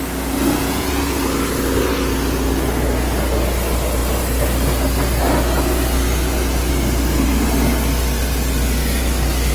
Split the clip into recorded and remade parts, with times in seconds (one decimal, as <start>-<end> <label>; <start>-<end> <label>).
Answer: 0.0-0.6 recorded; 0.6-1.2 remade; 1.2-9.5 recorded